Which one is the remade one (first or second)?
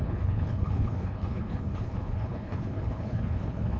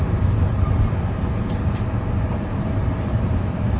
first